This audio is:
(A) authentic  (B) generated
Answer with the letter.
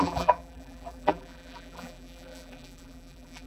B